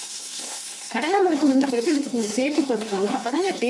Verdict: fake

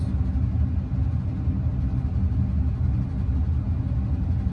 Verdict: real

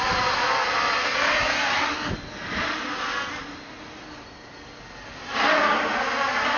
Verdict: real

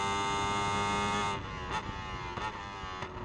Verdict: real